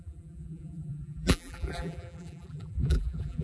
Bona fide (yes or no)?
no